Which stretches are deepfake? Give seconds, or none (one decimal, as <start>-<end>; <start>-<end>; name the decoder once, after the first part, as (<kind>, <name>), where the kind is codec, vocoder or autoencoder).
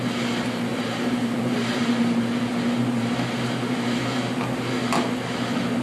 0.7-3.1 (vocoder, BigVGAN v2)